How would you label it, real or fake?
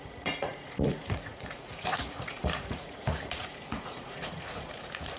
fake